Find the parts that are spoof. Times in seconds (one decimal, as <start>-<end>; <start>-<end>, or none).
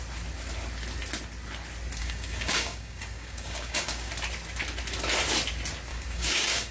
2.0-4.1; 5.9-6.7